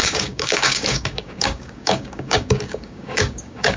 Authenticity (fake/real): fake